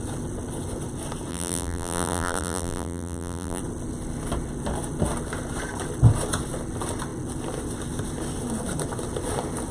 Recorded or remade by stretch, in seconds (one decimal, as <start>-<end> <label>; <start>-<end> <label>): 0.0-1.3 recorded; 1.3-3.6 remade; 3.6-9.7 recorded